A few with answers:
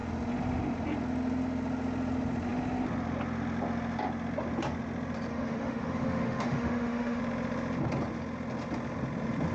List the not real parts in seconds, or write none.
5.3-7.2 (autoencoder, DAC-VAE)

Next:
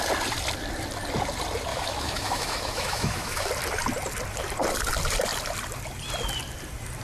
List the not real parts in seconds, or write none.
1.7-3.5 (autoencoder, DAC-VAE)

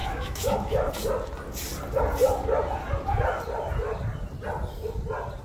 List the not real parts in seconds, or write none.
0.0-0.9 (autoencoder, DAC-VAE)

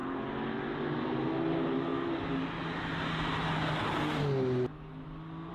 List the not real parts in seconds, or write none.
none